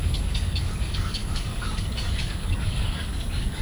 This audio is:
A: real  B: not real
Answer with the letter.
B